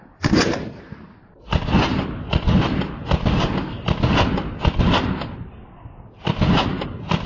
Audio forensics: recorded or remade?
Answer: recorded